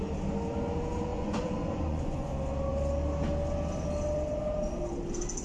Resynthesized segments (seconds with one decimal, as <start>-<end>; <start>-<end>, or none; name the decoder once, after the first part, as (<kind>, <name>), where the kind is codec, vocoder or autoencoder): 1.1-2.3 (vocoder, Vocos)